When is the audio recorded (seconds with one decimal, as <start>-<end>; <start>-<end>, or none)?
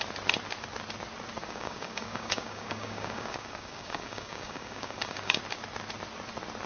0.0-1.4; 5.4-6.7